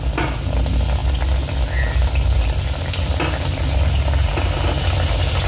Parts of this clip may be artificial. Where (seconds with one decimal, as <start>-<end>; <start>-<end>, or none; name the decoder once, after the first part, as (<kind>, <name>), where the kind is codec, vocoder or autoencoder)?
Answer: none